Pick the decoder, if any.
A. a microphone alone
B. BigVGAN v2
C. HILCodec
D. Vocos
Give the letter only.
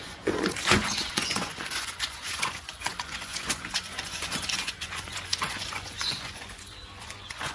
D